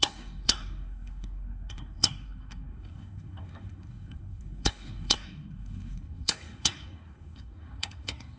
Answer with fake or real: fake